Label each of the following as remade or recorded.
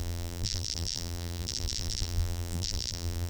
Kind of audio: remade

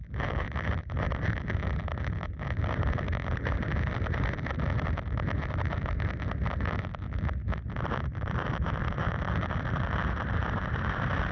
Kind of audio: remade